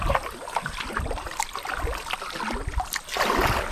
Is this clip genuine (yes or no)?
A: yes